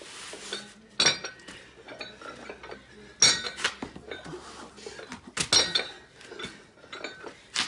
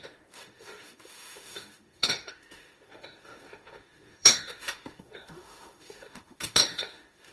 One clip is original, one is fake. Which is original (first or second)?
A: first